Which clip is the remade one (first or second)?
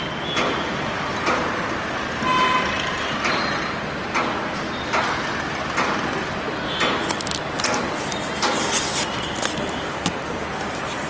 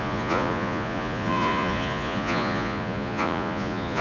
second